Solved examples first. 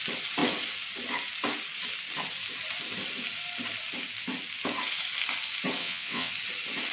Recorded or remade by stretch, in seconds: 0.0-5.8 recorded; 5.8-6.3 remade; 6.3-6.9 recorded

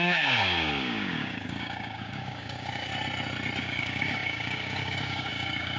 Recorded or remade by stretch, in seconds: 0.0-2.9 remade; 2.9-3.6 recorded; 3.6-5.8 remade

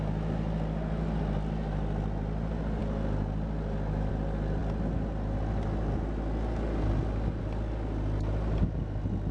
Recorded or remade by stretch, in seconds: 0.0-9.3 recorded

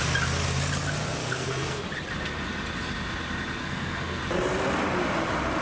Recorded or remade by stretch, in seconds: 0.0-1.2 recorded; 1.2-1.8 remade; 1.8-3.6 recorded; 3.6-4.2 remade; 4.2-5.6 recorded

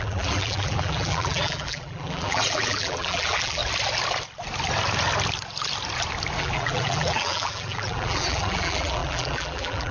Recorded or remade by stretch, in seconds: 0.0-3.6 remade; 3.6-6.4 recorded; 6.4-9.9 remade

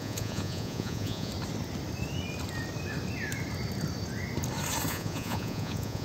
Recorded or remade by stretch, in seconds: 0.0-1.3 remade; 1.3-4.9 recorded; 4.9-6.0 remade